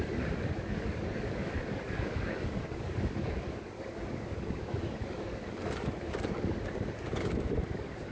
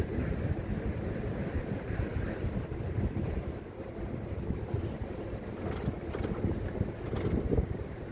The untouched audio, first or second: second